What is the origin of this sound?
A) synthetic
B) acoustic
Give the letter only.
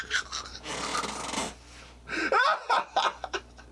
B